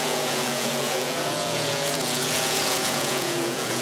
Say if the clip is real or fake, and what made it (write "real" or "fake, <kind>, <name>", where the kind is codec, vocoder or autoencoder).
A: fake, vocoder, Vocos